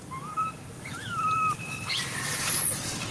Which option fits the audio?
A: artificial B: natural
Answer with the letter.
B